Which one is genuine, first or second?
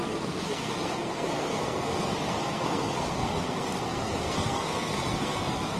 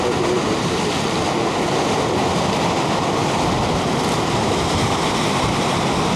second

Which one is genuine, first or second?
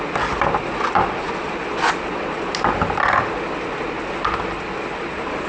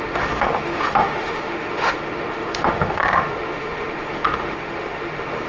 first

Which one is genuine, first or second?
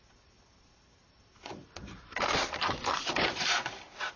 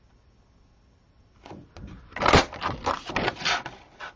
second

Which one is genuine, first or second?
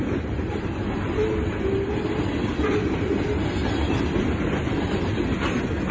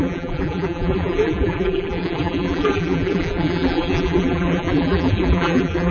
first